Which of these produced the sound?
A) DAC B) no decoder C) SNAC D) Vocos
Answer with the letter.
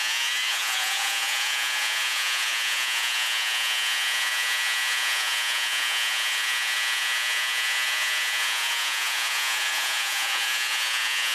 D